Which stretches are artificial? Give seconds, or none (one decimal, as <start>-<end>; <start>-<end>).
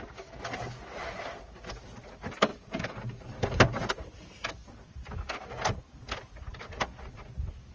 2.5-4.2